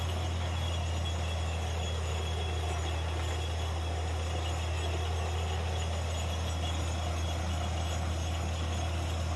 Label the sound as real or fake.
real